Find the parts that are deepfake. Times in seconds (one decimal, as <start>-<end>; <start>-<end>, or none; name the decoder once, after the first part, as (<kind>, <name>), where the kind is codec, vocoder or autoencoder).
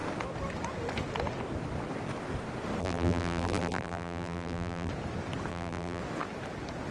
2.8-4.9 (vocoder, BigVGAN v2); 5.5-6.0